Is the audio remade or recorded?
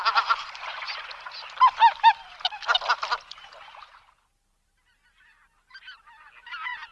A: recorded